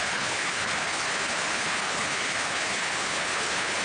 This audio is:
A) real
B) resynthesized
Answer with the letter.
B